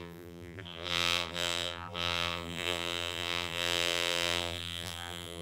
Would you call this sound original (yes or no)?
no